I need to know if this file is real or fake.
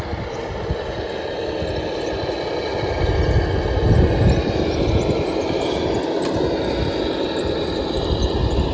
real